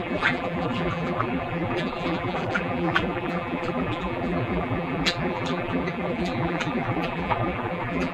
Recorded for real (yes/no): no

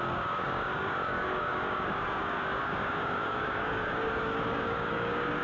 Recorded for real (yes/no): no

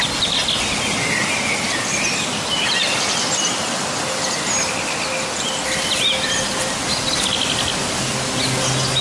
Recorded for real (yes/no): yes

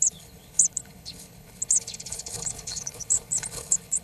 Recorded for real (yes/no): no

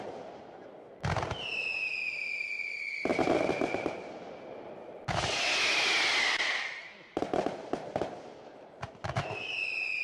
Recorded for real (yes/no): yes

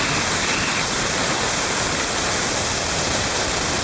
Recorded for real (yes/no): yes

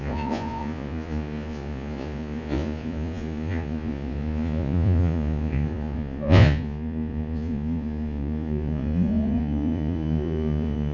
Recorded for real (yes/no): no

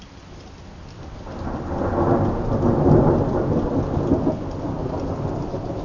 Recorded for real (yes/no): yes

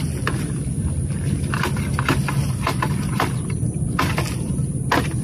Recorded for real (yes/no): yes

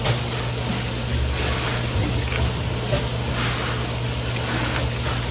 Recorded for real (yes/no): yes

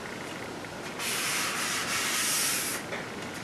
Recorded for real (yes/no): yes